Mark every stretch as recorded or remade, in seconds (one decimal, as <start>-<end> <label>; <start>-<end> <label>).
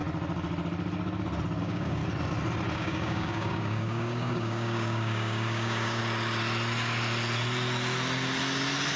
0.0-1.6 recorded; 1.6-2.0 remade; 2.0-2.7 recorded; 2.7-6.0 remade; 6.0-9.0 recorded